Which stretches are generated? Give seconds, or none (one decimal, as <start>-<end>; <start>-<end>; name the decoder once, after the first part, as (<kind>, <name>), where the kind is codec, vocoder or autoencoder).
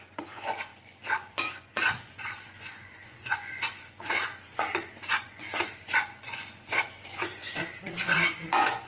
0.0-8.9 (vocoder, Vocos)